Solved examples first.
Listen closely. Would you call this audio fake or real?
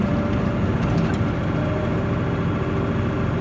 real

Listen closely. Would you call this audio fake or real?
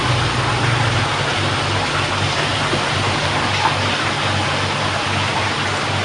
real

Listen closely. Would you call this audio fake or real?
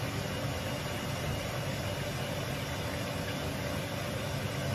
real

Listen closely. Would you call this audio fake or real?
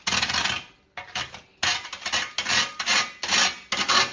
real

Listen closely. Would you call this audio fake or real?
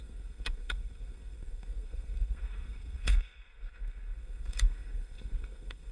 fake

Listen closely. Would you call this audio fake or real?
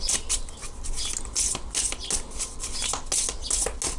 real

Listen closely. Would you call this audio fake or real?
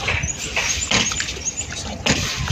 real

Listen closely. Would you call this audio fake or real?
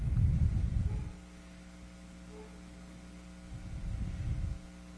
real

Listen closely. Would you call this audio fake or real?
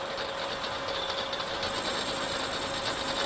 real